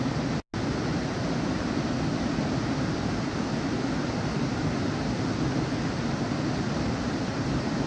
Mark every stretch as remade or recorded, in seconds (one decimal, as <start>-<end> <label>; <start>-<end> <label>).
0.0-7.9 recorded